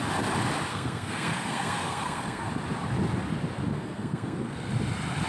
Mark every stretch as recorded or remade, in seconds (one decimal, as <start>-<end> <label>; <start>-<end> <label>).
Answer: 0.0-0.7 recorded; 0.7-2.5 remade; 2.5-3.7 recorded; 3.7-4.7 remade; 4.7-5.3 recorded